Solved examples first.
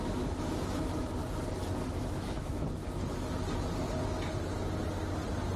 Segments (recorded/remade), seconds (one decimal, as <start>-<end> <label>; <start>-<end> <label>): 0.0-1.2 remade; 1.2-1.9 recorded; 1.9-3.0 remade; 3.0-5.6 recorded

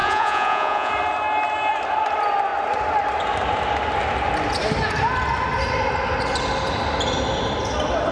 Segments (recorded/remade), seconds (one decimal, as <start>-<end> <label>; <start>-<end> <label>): 0.0-0.9 remade; 0.9-8.1 recorded

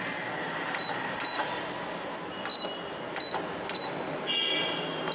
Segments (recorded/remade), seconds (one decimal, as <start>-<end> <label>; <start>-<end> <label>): 0.0-0.4 recorded; 0.4-1.6 remade; 1.6-5.1 recorded

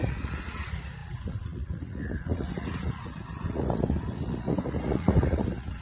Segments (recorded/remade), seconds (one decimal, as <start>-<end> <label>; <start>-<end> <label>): 0.0-5.8 remade

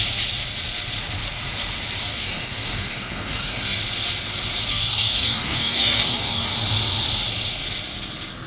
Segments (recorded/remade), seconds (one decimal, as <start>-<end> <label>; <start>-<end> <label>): 0.0-2.1 recorded; 2.1-3.8 remade; 3.8-4.7 recorded; 4.7-6.6 remade; 6.6-8.5 recorded